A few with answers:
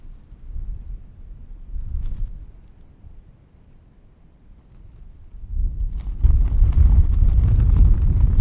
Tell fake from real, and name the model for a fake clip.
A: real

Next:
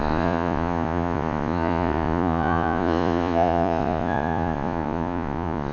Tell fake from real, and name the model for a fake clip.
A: fake, vocoder, Vocos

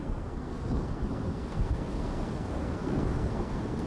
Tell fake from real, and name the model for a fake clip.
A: fake, codec, SNAC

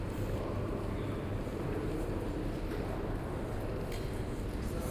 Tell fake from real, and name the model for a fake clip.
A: real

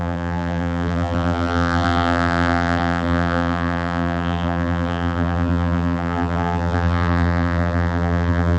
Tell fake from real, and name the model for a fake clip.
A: fake, vocoder, BigVGAN v2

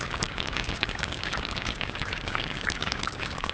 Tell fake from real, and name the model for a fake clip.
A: fake, codec, DAC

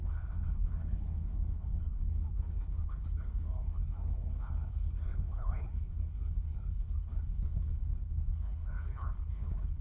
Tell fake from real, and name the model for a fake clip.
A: fake, codec, HILCodec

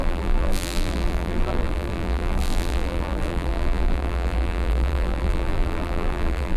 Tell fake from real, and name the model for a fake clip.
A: fake, vocoder, BigVGAN v2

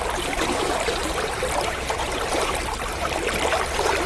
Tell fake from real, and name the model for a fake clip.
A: real